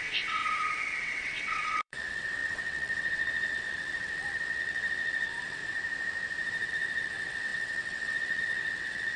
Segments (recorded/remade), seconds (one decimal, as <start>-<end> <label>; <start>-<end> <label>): 0.0-0.4 remade; 0.4-1.0 recorded; 1.0-5.6 remade; 5.6-6.7 recorded; 6.7-9.2 remade